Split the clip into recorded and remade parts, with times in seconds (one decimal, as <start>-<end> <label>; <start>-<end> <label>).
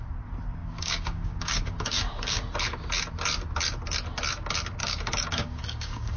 0.0-0.6 recorded; 0.6-2.4 remade; 2.4-4.8 recorded; 4.8-6.2 remade